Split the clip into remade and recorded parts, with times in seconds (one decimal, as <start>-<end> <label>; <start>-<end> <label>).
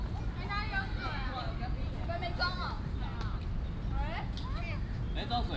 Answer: 0.0-1.0 recorded; 1.0-3.4 remade; 3.4-5.6 recorded